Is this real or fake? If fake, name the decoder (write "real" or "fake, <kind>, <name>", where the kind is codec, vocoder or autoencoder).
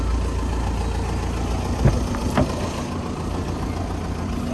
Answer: real